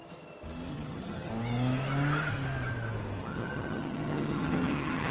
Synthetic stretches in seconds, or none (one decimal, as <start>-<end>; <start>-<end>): 0.7-1.3; 3.2-5.1

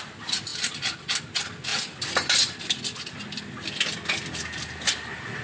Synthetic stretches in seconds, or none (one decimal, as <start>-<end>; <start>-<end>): none

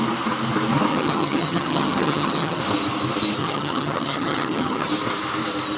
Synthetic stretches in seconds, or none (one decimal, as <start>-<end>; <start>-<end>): 0.9-2.6; 3.4-4.9

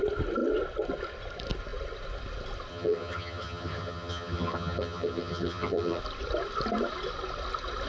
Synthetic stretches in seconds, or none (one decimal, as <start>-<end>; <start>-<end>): 2.7-6.0

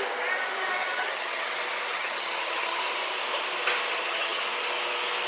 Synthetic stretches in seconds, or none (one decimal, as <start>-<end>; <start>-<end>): 0.8-1.5; 1.9-2.8; 3.9-4.4

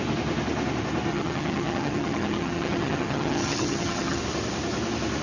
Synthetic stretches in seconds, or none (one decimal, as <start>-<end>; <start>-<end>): 1.1-4.2